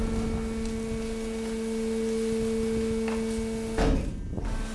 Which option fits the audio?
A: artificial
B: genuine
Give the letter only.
B